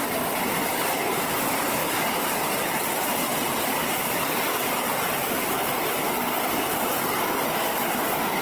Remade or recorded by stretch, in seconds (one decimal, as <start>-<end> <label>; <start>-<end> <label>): 0.0-4.9 recorded; 4.9-5.6 remade; 5.6-8.4 recorded